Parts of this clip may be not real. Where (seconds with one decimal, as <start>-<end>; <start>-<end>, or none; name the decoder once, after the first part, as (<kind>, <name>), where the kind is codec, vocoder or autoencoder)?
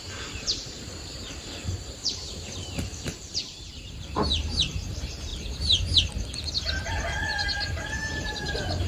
0.0-5.3 (vocoder, BigVGAN v2); 6.8-7.2; 7.7-8.9